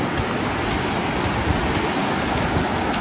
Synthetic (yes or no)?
no